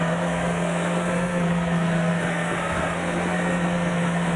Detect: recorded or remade remade